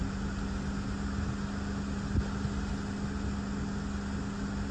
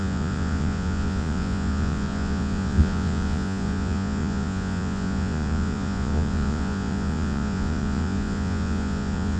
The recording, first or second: first